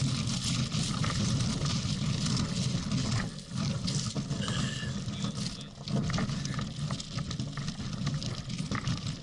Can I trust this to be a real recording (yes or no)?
yes